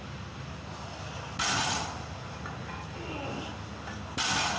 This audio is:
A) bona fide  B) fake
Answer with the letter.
A